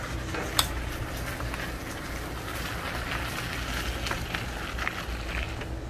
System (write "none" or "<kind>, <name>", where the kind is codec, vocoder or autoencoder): none